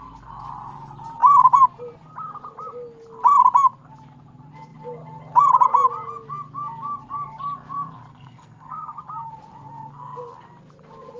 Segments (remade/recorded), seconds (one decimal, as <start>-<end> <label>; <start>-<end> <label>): 0.0-8.1 recorded; 8.1-9.0 remade; 9.0-11.2 recorded